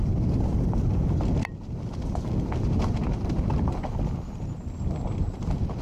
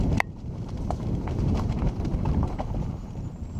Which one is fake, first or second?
second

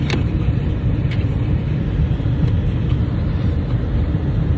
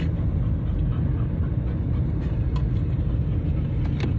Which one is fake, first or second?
first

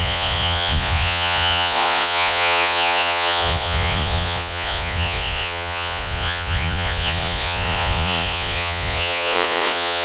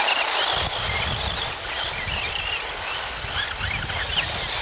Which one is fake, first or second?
first